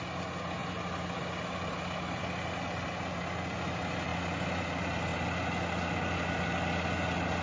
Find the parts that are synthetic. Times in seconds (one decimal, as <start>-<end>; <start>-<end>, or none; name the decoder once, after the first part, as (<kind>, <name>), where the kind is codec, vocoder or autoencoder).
none

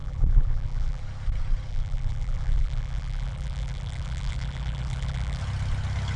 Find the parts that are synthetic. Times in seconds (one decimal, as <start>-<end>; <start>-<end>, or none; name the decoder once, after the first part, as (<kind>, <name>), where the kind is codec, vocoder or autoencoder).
0.0-1.0 (vocoder, BigVGAN v2); 1.7-5.4

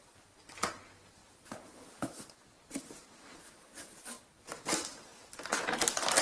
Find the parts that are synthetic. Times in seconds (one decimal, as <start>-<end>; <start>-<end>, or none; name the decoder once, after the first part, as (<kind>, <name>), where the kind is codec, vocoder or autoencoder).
1.2-3.3 (vocoder, BigVGAN v2)

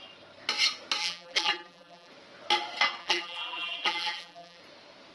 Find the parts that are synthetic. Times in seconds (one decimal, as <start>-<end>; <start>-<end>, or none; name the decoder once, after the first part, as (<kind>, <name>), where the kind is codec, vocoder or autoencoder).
1.0-2.1 (vocoder, BigVGAN v2); 3.0-4.6